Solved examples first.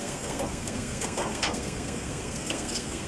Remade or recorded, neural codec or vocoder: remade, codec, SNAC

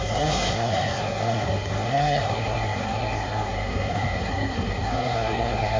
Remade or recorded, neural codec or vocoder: remade, codec, SNAC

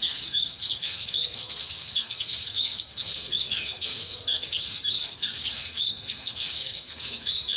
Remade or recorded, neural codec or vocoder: remade, codec, SNAC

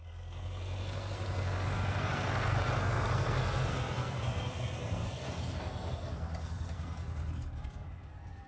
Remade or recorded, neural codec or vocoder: remade, codec, SNAC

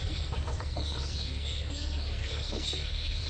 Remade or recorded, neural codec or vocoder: remade, codec, SNAC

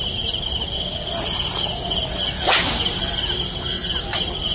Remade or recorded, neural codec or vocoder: recorded